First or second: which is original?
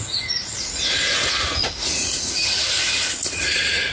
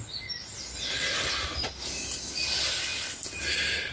second